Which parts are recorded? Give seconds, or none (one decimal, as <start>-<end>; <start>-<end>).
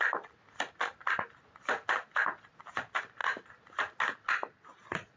0.0-5.2